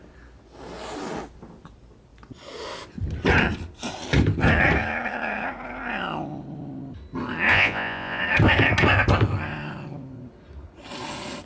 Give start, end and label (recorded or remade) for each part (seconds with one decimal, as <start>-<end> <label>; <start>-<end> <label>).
0.0-7.5 recorded; 7.5-8.2 remade; 8.2-11.5 recorded